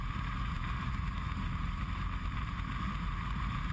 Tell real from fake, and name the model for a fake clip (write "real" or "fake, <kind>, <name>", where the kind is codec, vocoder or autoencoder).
fake, vocoder, BigVGAN v2